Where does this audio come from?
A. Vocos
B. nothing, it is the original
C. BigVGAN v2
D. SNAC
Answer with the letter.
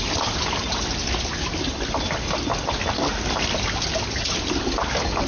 B